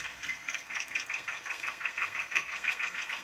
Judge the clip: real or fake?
fake